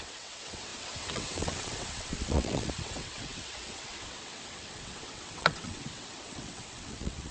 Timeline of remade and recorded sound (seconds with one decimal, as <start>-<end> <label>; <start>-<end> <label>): 0.0-7.3 remade